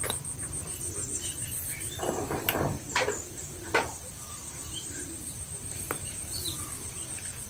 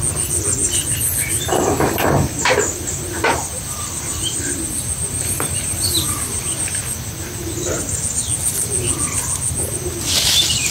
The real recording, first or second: second